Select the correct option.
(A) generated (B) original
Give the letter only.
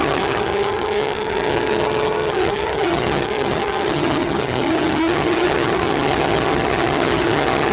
A